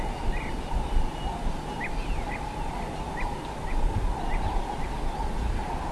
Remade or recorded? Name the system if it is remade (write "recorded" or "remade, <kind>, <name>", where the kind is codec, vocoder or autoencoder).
recorded